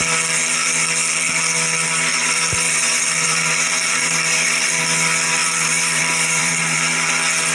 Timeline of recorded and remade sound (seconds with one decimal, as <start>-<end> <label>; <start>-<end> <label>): 0.0-2.1 recorded; 2.1-4.8 remade; 4.8-5.4 recorded; 5.4-6.0 remade; 6.0-6.4 recorded; 6.4-7.1 remade; 7.1-7.5 recorded